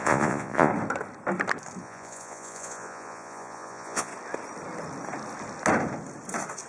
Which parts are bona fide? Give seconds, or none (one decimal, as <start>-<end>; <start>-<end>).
0.7-1.8; 4.1-6.7